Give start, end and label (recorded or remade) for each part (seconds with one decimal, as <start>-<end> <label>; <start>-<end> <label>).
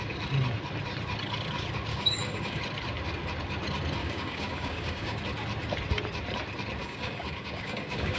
0.0-1.9 recorded; 1.9-2.6 remade; 2.6-4.0 recorded; 4.0-5.2 remade; 5.2-6.8 recorded; 6.8-8.2 remade